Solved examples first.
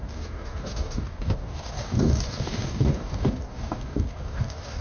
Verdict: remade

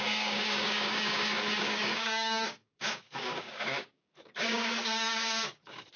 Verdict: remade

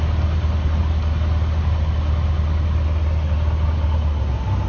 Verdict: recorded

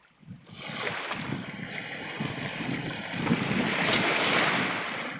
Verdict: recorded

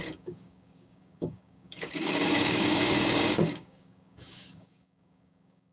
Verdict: remade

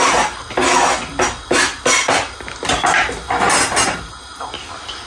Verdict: recorded